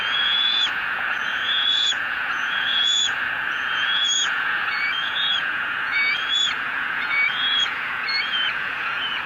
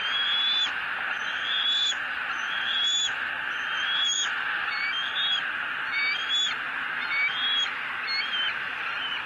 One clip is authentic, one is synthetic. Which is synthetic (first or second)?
first